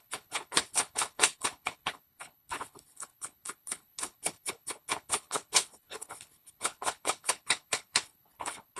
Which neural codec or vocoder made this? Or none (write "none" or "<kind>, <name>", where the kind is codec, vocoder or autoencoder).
codec, HILCodec